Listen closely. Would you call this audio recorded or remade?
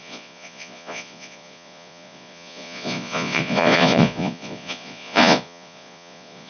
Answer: remade